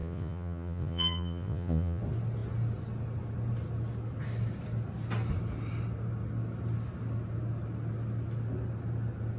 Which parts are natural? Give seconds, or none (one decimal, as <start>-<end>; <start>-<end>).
2.0-9.4